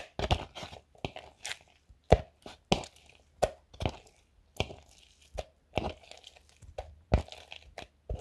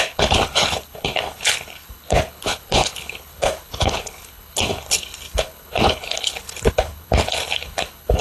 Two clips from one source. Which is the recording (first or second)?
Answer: first